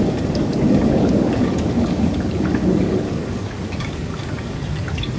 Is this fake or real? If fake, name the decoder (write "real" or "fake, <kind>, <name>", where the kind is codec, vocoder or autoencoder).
fake, codec, DAC